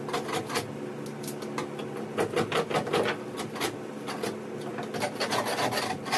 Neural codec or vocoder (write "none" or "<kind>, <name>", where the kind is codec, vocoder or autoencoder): none